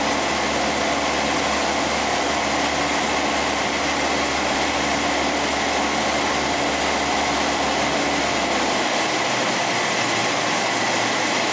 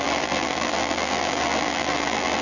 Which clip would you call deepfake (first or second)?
second